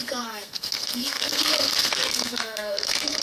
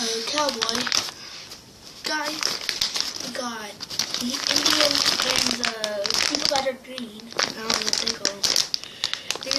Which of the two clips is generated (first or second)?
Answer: first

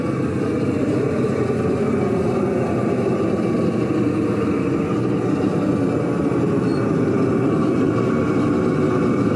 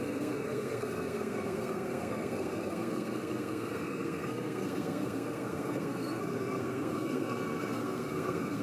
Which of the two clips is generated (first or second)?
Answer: second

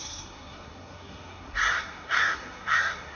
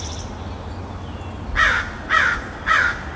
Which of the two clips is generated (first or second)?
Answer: first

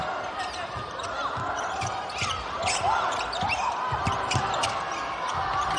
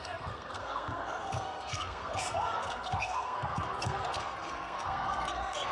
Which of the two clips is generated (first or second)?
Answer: second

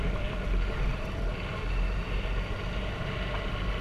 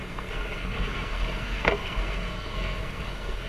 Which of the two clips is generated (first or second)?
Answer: second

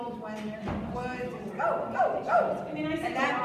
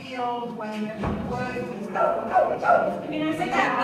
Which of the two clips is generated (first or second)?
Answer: second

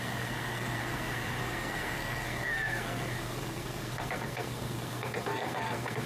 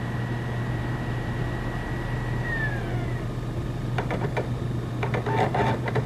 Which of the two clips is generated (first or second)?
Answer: first